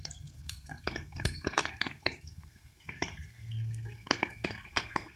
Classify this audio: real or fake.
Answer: fake